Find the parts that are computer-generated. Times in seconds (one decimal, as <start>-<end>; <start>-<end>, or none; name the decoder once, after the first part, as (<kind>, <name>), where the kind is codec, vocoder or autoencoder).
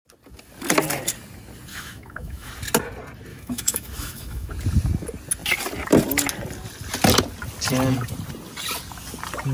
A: 1.7-2.5 (autoencoder, DAC-VAE); 3.3-4.5